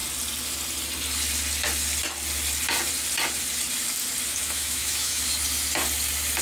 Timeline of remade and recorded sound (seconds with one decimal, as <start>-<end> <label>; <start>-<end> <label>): 0.0-4.3 recorded; 4.3-5.2 remade; 5.2-6.4 recorded